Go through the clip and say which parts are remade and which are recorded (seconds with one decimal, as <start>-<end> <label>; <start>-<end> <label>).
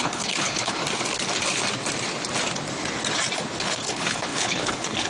0.0-0.8 remade; 0.8-3.6 recorded; 3.6-5.1 remade